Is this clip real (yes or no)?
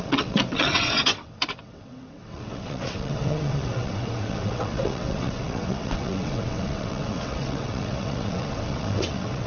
no